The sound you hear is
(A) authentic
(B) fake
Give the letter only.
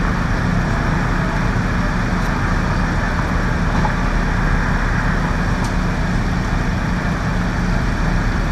A